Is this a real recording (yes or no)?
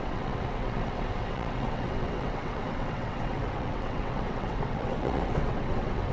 no